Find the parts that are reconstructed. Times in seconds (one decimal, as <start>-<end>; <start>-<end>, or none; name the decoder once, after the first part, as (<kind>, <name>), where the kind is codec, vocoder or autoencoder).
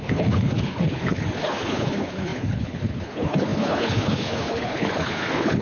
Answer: 0.0-5.6 (codec, HILCodec)